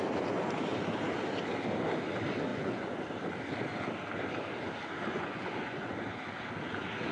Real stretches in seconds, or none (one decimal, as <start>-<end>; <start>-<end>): 0.0-2.5; 3.0-5.1; 6.0-7.1